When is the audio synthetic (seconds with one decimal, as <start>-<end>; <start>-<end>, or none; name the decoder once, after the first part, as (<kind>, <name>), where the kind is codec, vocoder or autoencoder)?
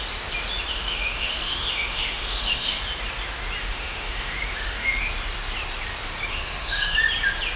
0.7-2.8 (autoencoder, DAC-VAE); 3.6-5.0; 6.3-7.0